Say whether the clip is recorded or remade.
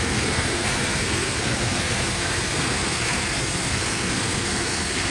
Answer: remade